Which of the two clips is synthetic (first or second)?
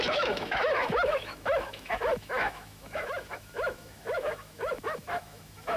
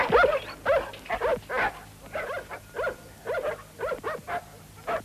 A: first